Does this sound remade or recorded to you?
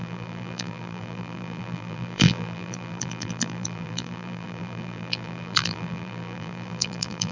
remade